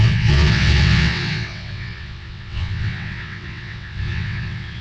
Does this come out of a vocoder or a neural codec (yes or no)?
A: yes